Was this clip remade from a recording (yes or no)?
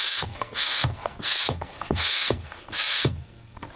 yes